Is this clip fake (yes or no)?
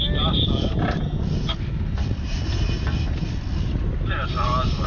no